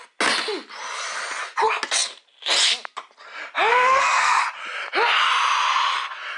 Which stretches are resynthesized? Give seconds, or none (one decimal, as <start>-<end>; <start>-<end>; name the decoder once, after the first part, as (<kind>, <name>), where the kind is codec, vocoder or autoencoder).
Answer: 3.7-4.4 (codec, SNAC)